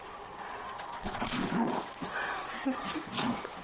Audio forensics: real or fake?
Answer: fake